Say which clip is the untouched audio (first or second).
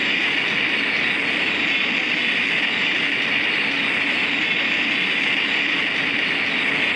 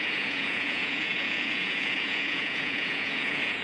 first